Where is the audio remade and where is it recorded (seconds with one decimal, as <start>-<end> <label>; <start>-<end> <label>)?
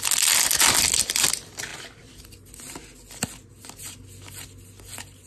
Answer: 0.0-5.3 recorded